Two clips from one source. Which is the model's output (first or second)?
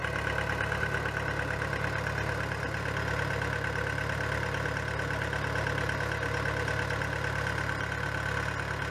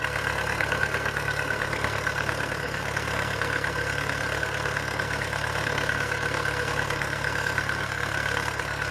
second